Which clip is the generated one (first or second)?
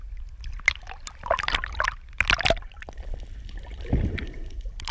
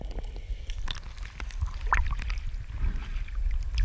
first